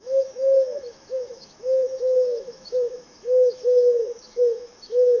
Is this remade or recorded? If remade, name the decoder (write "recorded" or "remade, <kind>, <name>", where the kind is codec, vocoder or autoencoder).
remade, autoencoder, DAC-VAE